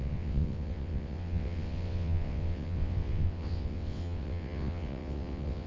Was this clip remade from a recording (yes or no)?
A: yes